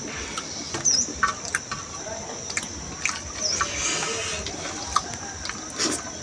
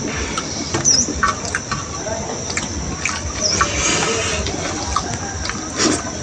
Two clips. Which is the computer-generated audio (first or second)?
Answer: second